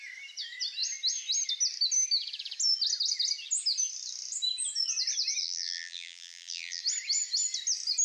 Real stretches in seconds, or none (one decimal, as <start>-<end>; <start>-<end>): 0.0-5.4; 6.8-8.0